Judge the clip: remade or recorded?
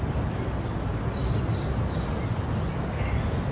recorded